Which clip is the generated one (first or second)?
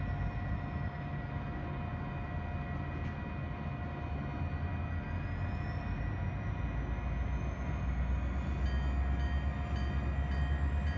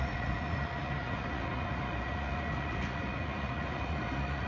second